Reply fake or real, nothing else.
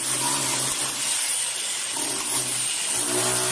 real